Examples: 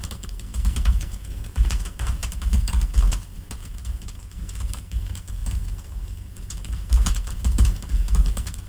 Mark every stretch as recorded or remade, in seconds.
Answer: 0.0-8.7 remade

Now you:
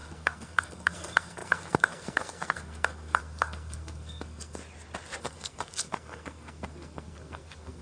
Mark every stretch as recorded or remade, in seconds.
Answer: 0.0-4.6 remade; 4.6-5.2 recorded; 5.2-7.8 remade

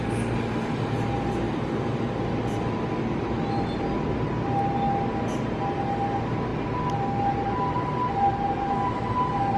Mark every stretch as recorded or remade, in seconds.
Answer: 0.0-9.6 recorded